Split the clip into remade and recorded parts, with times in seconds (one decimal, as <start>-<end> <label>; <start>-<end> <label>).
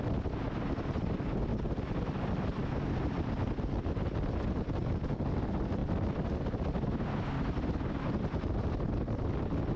0.0-9.8 recorded